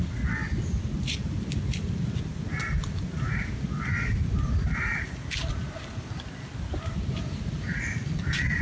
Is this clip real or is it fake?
real